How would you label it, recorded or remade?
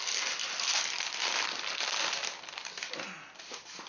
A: recorded